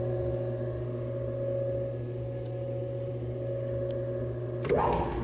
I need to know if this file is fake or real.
real